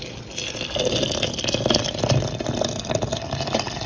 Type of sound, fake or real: real